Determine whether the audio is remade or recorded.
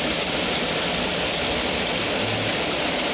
recorded